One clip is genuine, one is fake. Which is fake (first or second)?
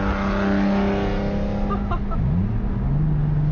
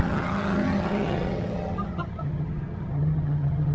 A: second